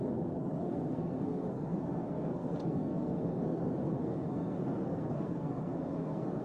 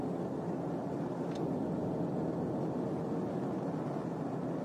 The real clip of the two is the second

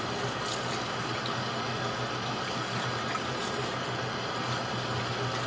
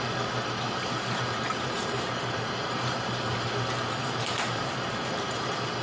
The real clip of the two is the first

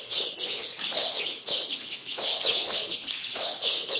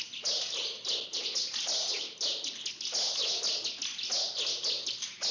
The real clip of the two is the second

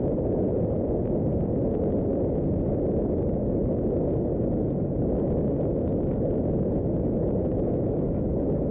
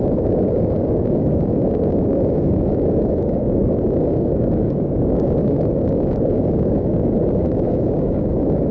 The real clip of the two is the first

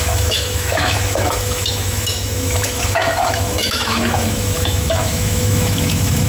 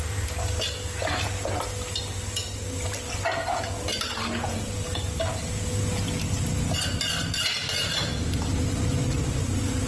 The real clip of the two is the second